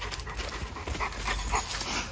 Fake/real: real